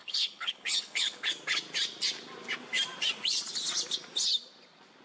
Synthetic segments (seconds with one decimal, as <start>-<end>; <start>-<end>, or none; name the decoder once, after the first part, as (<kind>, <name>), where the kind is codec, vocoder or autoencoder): 0.0-1.3 (codec, HILCodec)